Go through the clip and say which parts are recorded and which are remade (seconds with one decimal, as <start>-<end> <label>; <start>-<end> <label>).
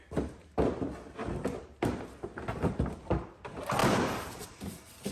0.0-3.8 recorded; 3.8-5.1 remade